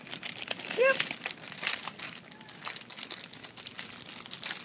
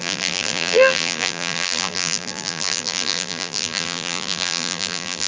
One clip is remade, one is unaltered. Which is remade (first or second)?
second